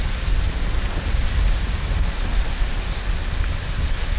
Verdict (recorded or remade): recorded